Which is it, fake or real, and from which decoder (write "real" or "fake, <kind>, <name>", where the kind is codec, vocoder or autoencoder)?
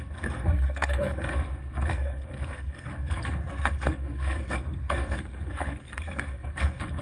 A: fake, codec, SNAC